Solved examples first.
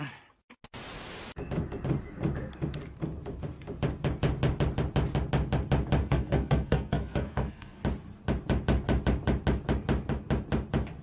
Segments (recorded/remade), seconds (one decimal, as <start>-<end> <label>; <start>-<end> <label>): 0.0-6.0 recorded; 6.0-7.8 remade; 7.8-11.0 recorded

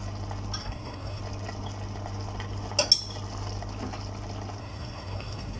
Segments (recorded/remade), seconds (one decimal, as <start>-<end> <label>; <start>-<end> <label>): 0.0-0.6 recorded; 0.6-1.2 remade; 1.2-4.6 recorded; 4.6-5.6 remade

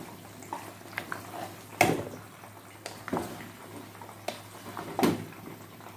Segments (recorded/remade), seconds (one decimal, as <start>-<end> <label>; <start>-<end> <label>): 0.0-6.0 recorded

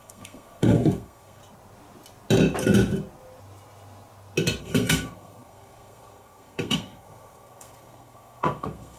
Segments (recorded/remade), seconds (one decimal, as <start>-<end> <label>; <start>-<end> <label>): 0.0-1.4 remade; 1.4-4.6 recorded; 4.6-9.0 remade

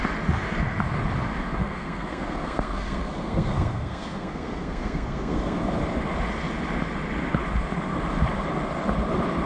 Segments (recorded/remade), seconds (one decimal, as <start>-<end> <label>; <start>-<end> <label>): 0.0-1.6 recorded; 1.6-5.6 remade; 5.6-9.5 recorded